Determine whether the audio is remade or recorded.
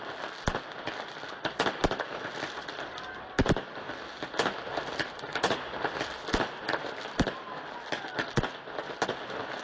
recorded